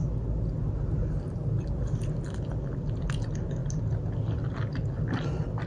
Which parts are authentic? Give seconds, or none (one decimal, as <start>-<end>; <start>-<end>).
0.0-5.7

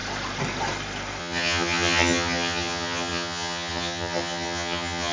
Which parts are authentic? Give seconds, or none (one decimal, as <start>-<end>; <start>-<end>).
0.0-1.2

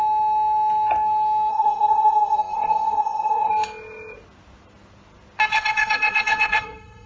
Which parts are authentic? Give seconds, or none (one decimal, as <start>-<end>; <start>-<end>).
0.0-1.5; 3.5-5.5